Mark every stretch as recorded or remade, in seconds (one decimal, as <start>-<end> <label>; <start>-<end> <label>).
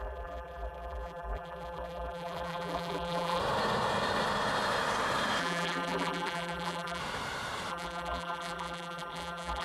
0.0-3.4 remade; 3.4-5.4 recorded; 5.4-7.0 remade; 7.0-7.7 recorded; 7.7-9.6 remade